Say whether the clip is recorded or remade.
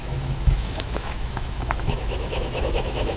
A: remade